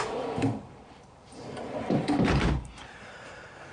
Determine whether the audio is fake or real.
fake